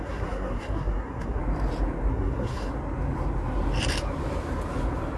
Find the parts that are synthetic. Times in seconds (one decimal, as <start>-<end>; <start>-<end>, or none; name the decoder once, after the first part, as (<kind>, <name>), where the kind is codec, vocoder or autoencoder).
0.0-1.4 (codec, SNAC); 2.1-2.7